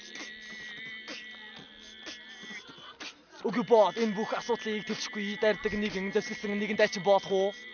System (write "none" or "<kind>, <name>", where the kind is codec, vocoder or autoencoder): none